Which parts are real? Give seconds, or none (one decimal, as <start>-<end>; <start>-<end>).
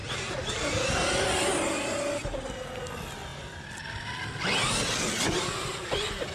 0.0-6.3